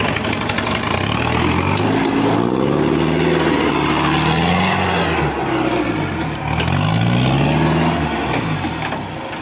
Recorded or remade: recorded